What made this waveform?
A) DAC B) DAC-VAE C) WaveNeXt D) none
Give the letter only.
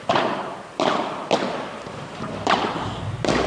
D